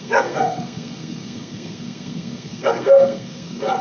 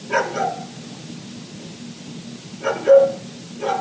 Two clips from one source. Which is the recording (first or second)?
second